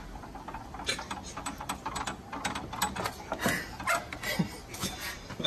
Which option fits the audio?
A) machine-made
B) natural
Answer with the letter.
B